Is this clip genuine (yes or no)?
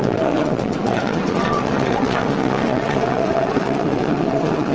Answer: no